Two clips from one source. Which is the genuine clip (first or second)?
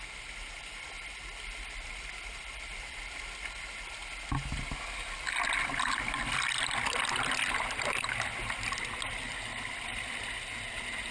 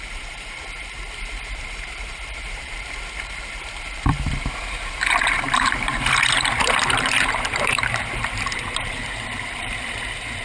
first